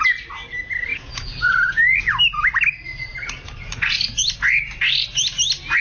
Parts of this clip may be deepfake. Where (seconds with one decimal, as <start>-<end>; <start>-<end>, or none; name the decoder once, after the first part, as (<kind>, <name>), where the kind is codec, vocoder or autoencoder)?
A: 0.9-2.2 (vocoder, Vocos)